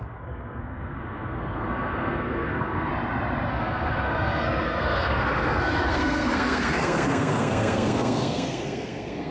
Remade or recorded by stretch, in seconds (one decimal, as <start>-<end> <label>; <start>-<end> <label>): 0.0-2.9 remade; 2.9-3.5 recorded; 3.5-9.3 remade